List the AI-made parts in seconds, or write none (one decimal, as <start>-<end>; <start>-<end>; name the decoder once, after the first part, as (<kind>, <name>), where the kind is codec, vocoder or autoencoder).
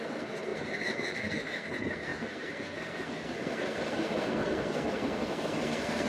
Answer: 0.0-6.1 (codec, SNAC)